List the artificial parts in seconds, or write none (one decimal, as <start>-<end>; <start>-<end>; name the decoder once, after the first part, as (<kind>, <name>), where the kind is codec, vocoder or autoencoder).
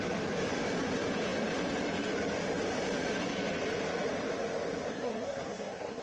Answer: 4.9-6.0 (codec, SNAC)